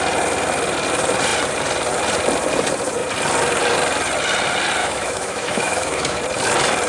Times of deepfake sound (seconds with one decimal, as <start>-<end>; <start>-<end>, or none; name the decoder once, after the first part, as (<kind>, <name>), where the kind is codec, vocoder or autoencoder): 4.8-6.2 (autoencoder, DAC-VAE)